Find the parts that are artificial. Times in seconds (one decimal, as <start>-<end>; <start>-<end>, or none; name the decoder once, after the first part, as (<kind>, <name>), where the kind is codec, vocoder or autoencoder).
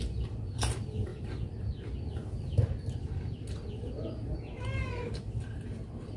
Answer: none